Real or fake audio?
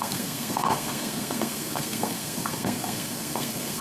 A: fake